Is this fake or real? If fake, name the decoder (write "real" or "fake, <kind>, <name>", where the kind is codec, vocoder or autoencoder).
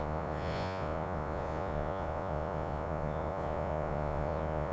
fake, vocoder, Vocos